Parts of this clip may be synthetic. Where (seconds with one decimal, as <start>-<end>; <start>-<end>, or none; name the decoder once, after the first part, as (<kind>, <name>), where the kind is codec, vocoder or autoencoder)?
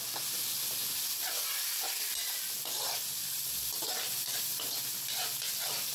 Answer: none